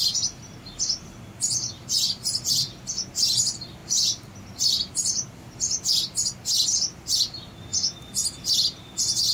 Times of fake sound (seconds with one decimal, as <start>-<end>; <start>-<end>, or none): none

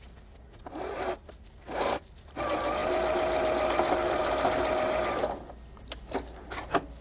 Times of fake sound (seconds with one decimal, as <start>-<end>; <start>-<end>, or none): 0.8-2.8

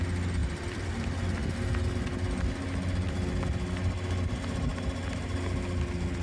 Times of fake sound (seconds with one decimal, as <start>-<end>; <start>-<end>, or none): 0.4-0.9

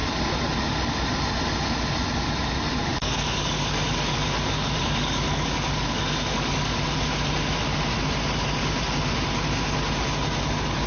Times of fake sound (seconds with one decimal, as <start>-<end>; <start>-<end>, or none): 2.8-6.8

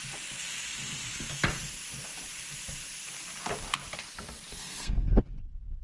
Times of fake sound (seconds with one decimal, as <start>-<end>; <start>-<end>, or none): 4.5-5.1

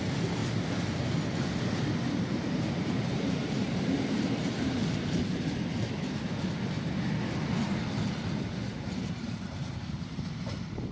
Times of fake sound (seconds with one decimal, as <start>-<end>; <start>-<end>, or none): 0.0-0.4; 2.6-4.8; 8.7-10.9

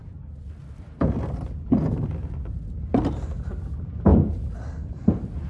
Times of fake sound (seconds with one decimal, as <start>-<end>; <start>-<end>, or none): none